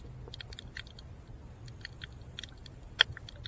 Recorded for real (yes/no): yes